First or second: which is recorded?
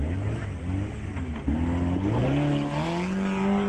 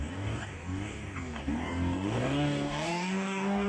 first